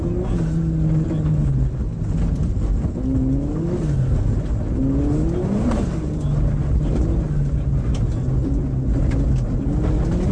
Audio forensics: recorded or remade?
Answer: recorded